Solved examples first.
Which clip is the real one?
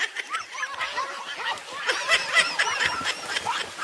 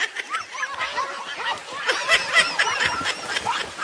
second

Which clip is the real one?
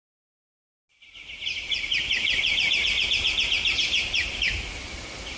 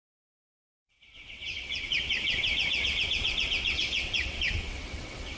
first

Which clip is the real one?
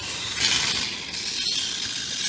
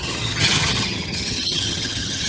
first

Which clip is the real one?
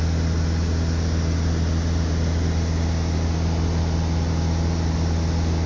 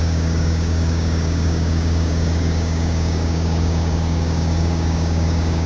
first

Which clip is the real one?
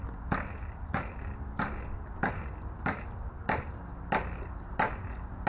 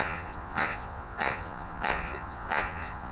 first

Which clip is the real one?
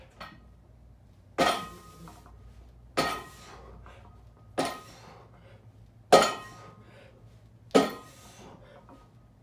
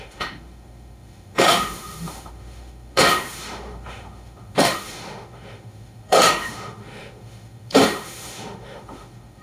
first